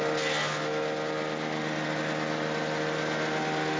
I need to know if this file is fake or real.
real